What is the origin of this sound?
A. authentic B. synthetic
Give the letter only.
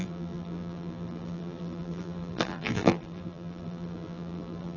B